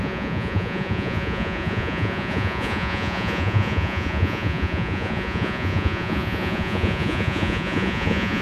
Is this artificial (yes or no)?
yes